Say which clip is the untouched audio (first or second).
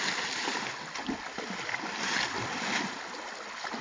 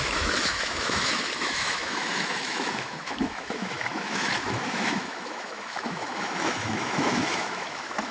first